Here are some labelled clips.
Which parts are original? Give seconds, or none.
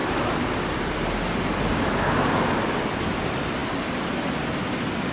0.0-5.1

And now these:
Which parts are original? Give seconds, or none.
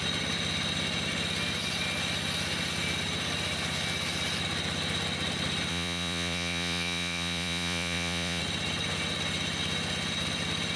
0.0-5.7; 8.4-10.8